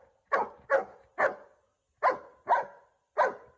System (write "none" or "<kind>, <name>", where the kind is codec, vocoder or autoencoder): none